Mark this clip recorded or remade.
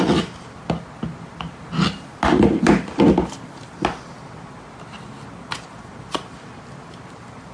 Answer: recorded